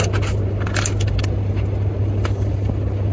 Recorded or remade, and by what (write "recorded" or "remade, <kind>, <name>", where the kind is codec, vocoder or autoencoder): recorded